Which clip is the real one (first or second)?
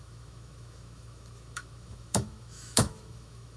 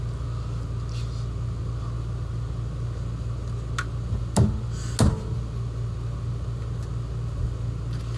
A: second